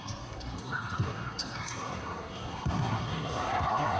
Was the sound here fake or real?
fake